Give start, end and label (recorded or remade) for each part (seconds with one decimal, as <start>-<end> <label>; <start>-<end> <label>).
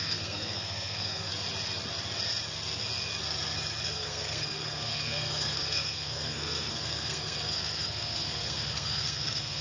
0.0-1.3 remade; 1.3-3.8 recorded; 3.8-9.6 remade